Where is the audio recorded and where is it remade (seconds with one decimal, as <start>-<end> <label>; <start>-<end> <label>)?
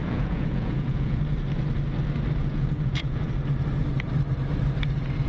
0.0-1.2 remade; 1.2-2.4 recorded; 2.4-3.3 remade; 3.3-5.3 recorded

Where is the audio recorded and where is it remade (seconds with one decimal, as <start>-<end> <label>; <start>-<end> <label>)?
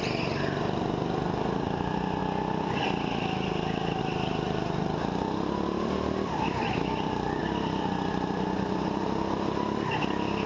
0.0-10.5 recorded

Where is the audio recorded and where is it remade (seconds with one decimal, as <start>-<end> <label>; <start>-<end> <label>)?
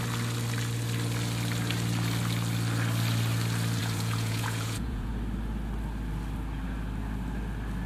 0.0-3.8 recorded; 3.8-5.1 remade; 5.1-7.9 recorded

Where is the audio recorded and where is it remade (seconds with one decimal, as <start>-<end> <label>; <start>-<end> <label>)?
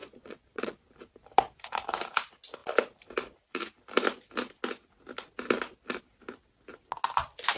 0.0-0.8 remade; 0.8-7.6 recorded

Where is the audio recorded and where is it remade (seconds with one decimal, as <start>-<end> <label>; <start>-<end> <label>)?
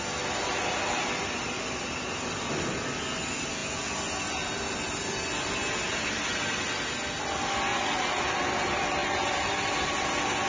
0.0-7.7 recorded; 7.7-8.2 remade; 8.2-10.5 recorded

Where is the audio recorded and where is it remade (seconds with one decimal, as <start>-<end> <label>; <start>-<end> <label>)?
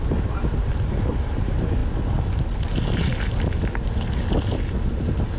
0.0-5.4 recorded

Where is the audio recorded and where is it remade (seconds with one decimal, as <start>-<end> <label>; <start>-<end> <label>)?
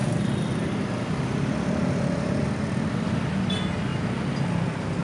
0.0-5.0 recorded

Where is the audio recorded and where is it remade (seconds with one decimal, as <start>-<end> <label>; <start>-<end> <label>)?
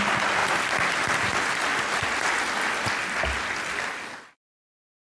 0.0-5.2 recorded